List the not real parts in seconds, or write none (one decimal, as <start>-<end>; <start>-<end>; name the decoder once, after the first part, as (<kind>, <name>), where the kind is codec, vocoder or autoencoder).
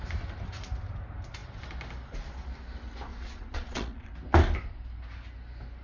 3.1-4.1 (vocoder, Vocos)